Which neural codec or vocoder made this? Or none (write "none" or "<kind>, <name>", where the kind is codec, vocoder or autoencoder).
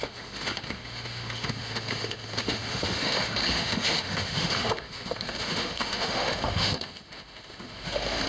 autoencoder, DAC-VAE